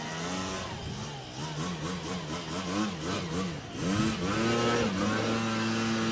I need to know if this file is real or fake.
real